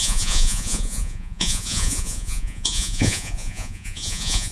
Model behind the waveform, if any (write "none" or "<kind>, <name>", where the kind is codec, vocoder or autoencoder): vocoder, Vocos